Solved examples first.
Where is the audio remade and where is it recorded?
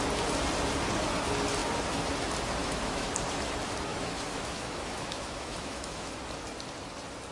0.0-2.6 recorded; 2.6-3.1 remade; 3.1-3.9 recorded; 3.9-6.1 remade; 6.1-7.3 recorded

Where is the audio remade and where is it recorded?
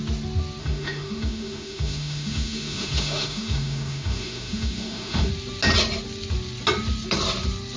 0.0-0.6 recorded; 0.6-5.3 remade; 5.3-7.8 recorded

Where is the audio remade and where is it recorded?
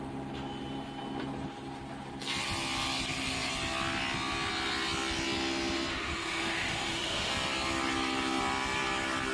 0.0-5.9 recorded; 5.9-7.3 remade; 7.3-9.3 recorded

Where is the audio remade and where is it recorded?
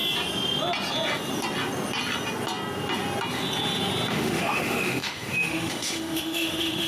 0.0-4.1 recorded; 4.1-6.9 remade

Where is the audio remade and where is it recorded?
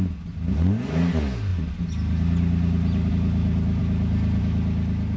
0.0-5.2 recorded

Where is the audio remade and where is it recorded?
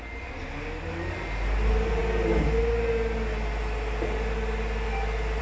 0.0-5.4 recorded